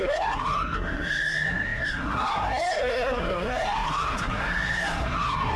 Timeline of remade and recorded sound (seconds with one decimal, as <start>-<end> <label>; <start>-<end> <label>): 0.0-5.6 remade